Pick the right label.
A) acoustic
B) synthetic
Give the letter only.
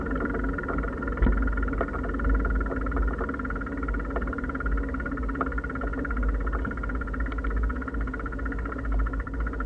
A